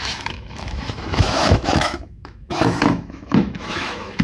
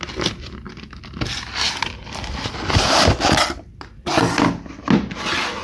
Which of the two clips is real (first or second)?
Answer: second